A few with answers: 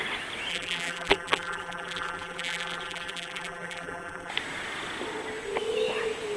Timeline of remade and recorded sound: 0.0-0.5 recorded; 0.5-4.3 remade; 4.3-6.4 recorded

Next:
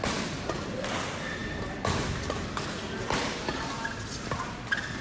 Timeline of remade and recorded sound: 0.0-5.0 recorded